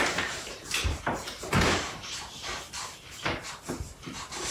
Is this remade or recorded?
remade